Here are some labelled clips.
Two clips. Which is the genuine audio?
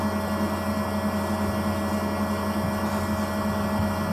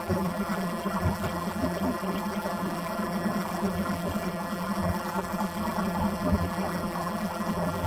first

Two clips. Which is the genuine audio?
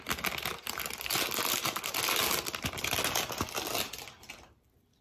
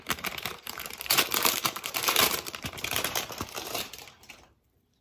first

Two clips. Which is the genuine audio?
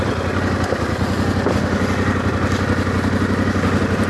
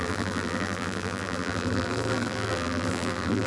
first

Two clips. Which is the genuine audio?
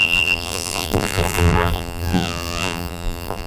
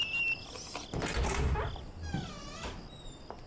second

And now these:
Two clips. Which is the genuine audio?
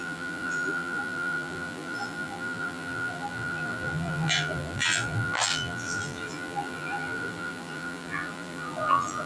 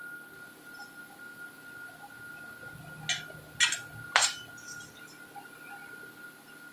second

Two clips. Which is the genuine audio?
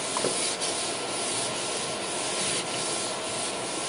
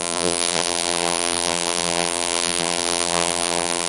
first